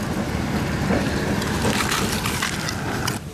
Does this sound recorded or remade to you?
recorded